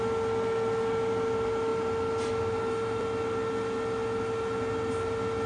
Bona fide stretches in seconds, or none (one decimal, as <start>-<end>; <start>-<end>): 0.0-5.5